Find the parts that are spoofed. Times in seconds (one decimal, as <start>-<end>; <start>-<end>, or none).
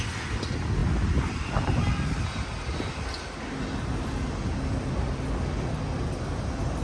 none